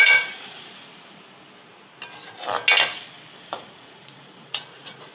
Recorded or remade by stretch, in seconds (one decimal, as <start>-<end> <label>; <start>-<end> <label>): 0.0-0.9 remade; 0.9-3.4 recorded; 3.4-5.1 remade